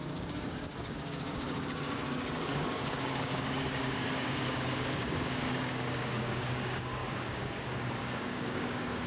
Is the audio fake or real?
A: fake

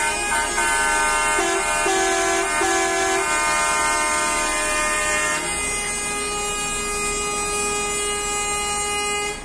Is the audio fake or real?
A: real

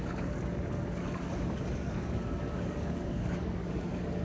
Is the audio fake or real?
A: fake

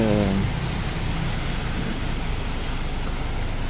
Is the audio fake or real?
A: real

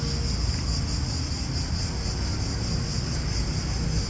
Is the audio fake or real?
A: real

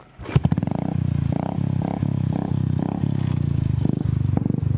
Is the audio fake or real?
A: real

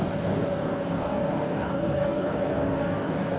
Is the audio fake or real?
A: fake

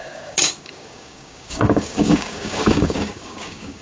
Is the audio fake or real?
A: fake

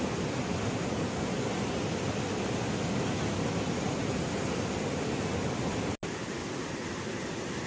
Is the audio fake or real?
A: real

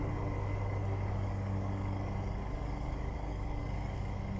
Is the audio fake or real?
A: fake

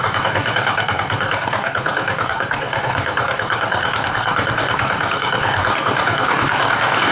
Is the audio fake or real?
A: fake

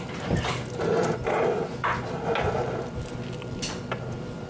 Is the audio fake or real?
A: real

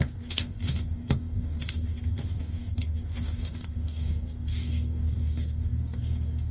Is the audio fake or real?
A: fake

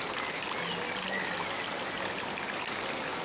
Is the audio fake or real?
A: real